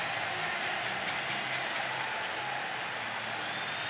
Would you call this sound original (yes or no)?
yes